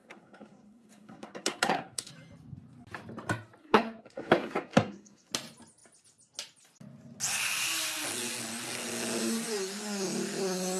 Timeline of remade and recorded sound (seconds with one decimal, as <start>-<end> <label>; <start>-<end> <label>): 0.0-2.1 remade; 2.1-3.6 recorded; 3.6-5.3 remade; 5.3-10.8 recorded